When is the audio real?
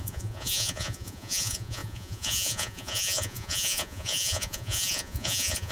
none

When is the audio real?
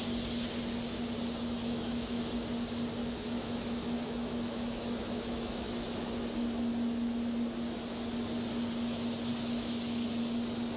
0.0-1.6; 2.2-3.0; 6.1-10.8